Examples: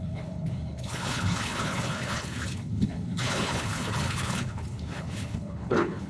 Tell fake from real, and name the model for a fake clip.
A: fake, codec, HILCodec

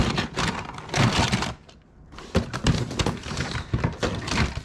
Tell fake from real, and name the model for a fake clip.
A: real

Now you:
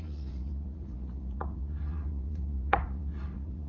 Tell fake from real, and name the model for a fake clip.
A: fake, vocoder, Vocos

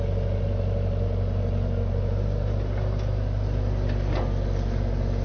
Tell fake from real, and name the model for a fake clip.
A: real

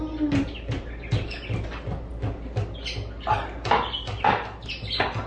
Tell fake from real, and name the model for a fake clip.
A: real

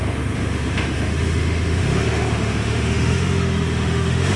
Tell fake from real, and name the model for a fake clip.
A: fake, autoencoder, DAC-VAE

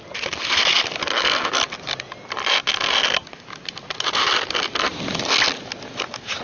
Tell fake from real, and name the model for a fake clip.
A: real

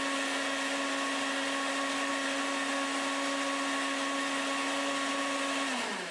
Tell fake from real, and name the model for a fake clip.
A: real